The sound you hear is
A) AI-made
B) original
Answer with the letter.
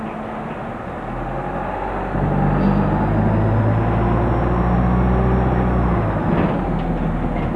B